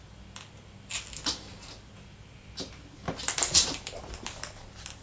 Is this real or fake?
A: real